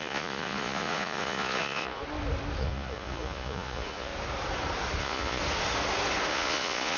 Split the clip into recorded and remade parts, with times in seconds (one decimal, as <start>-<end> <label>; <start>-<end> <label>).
0.0-2.0 remade; 2.0-2.6 recorded; 2.6-4.1 remade; 4.1-5.0 recorded; 5.0-5.4 remade; 5.4-6.3 recorded; 6.3-7.0 remade